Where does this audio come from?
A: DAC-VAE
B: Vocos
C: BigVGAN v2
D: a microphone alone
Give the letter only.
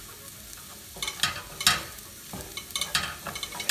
D